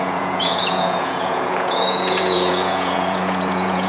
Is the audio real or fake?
fake